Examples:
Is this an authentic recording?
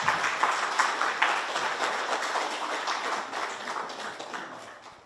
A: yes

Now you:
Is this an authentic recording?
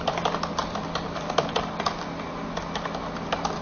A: yes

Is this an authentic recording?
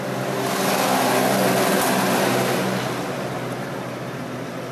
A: yes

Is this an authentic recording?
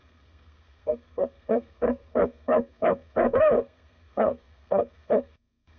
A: no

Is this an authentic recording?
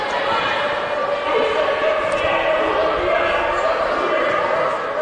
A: yes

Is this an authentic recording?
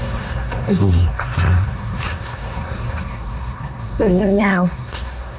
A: no